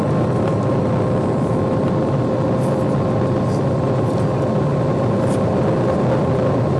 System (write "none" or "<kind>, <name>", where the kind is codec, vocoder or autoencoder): none